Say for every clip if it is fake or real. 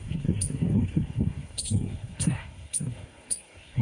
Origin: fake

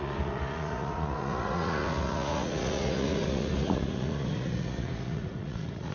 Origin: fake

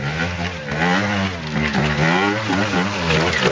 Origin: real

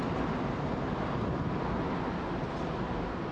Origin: real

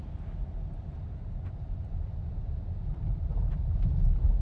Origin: real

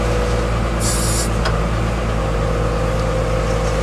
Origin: real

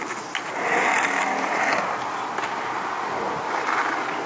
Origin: real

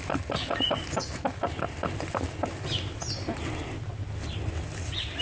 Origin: real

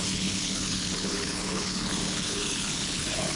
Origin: fake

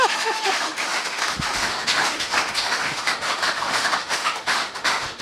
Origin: fake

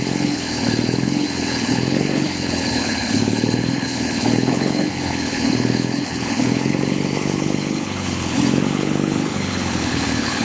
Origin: fake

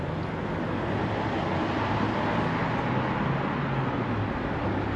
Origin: real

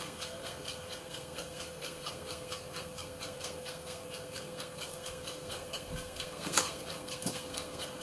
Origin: fake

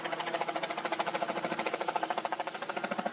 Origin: real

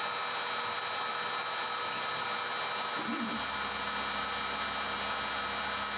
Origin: real